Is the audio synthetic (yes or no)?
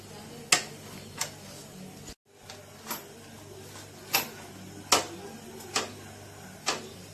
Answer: no